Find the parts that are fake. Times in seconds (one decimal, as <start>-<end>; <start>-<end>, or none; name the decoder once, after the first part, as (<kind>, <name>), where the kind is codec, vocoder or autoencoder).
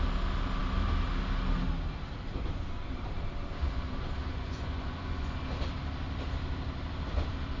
4.3-5.4 (vocoder, Vocos)